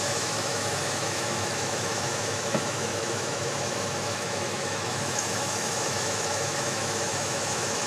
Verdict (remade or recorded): remade